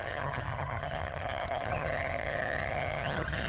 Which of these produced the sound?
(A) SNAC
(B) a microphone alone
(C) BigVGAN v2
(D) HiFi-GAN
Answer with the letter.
D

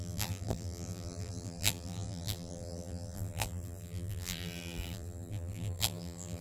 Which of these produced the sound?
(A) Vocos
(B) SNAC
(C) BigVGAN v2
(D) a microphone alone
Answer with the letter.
C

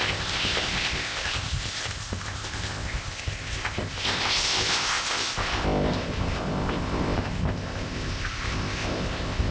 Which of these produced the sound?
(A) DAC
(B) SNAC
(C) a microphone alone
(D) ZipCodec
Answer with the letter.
D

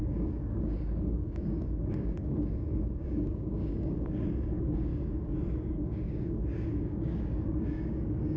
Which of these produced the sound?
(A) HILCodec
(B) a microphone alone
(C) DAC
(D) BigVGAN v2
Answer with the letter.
C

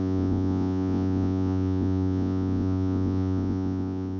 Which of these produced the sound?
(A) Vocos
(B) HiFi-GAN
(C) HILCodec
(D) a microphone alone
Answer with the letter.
A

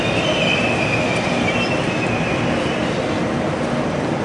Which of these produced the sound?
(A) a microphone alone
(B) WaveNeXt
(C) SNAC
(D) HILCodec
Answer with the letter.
A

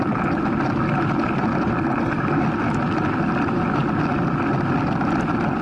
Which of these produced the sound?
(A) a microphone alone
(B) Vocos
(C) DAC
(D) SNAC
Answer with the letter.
A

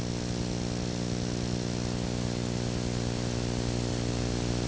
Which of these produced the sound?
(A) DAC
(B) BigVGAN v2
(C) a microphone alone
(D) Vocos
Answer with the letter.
C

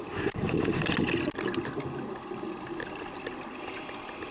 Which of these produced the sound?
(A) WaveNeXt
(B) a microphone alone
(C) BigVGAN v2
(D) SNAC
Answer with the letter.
B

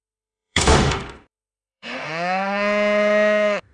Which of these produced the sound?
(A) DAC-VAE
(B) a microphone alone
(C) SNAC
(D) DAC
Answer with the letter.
A